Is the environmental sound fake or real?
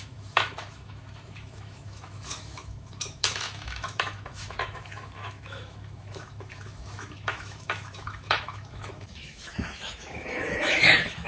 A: fake